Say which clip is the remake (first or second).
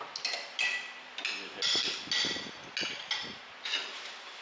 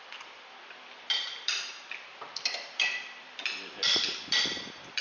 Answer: second